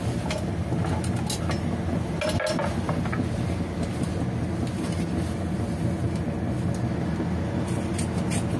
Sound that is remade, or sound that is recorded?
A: recorded